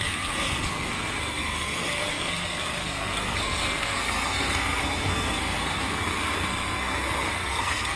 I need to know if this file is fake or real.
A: fake